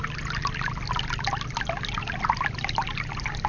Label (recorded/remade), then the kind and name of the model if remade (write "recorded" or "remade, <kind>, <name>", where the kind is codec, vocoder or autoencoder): recorded